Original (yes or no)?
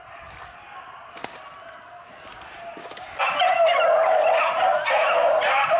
yes